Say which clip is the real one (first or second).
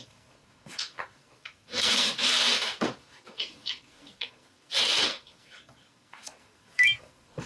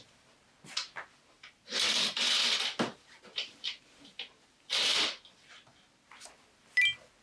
second